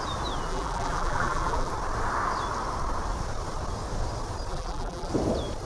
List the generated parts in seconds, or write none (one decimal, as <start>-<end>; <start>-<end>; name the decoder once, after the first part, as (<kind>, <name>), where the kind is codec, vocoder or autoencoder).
0.5-1.7 (vocoder, BigVGAN v2); 4.5-5.1